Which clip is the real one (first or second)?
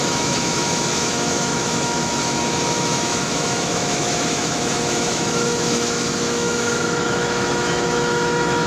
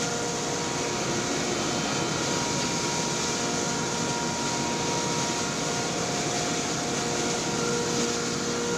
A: second